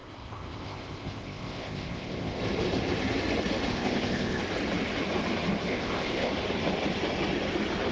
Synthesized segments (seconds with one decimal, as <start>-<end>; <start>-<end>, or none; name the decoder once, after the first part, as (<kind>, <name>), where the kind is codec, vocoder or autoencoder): 0.0-2.4 (codec, ZipCodec); 3.7-4.4; 5.7-6.3